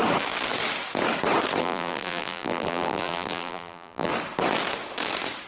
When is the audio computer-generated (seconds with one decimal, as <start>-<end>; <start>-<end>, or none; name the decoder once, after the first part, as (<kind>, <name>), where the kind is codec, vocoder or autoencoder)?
1.6-4.1 (vocoder, BigVGAN v2)